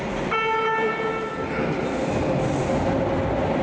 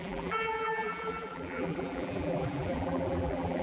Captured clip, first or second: first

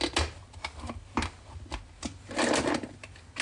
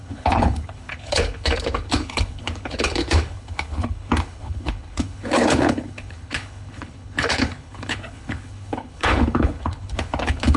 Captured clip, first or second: first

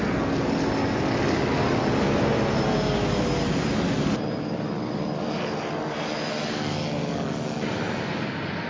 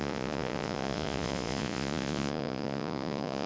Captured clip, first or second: first